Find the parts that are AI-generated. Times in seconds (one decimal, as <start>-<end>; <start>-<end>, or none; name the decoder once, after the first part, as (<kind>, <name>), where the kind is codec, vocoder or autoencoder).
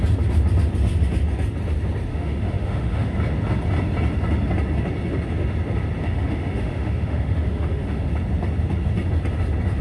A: 2.1-3.1 (autoencoder, DAC-VAE); 6.0-8.1